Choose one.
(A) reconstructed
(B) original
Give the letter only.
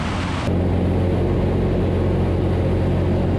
B